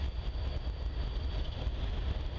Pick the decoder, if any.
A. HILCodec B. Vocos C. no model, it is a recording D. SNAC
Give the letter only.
C